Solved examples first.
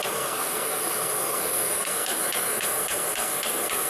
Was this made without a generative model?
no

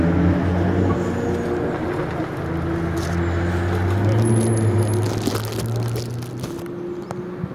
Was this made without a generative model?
yes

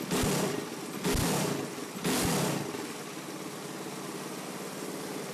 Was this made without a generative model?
yes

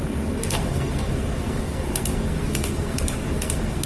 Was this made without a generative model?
no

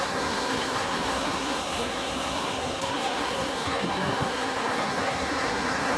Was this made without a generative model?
no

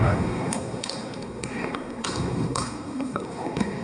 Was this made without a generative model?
no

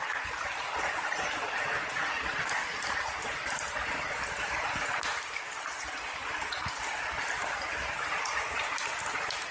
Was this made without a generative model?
yes